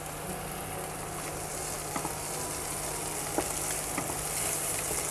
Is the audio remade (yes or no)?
no